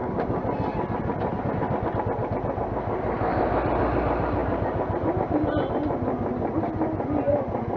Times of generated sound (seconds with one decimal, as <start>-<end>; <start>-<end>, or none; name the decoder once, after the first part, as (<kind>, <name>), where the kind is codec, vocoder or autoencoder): none